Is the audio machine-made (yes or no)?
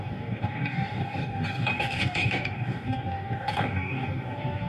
yes